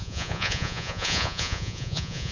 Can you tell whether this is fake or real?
fake